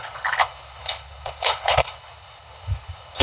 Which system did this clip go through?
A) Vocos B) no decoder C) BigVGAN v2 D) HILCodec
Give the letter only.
D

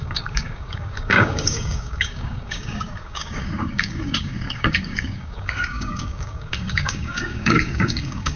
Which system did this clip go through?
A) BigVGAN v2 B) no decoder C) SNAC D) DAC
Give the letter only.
D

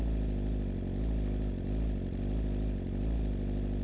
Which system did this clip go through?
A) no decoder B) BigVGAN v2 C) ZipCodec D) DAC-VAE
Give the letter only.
A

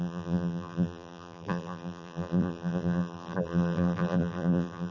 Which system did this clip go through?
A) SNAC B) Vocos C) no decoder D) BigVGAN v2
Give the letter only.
D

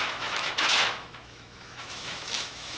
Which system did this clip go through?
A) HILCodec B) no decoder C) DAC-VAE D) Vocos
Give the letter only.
C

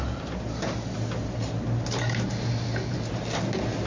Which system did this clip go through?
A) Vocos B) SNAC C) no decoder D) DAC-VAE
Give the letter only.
C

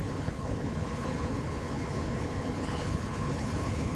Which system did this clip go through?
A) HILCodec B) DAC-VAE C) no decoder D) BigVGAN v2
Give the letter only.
A